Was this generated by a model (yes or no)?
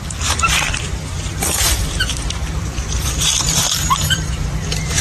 yes